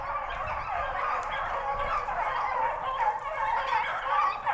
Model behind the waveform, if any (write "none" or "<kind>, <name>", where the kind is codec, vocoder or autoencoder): none